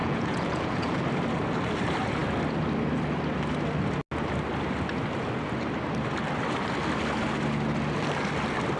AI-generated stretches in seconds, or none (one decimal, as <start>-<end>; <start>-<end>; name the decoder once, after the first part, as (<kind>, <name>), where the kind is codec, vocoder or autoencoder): 0.0-1.0 (vocoder, Vocos)